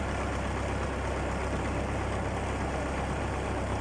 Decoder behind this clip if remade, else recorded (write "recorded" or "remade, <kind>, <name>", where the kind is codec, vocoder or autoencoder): recorded